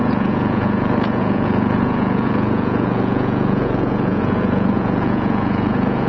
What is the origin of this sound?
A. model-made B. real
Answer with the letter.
A